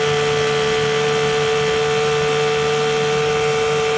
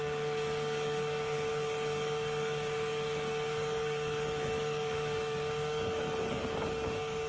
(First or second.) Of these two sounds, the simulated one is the second